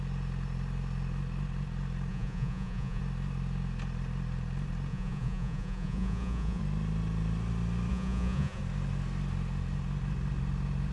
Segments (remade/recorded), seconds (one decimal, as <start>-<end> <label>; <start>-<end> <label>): 0.0-2.1 recorded; 2.1-3.0 remade; 3.0-4.9 recorded; 4.9-6.6 remade; 6.6-7.9 recorded; 7.9-8.6 remade; 8.6-10.9 recorded